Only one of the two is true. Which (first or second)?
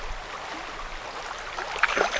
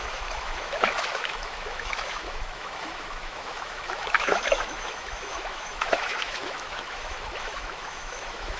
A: first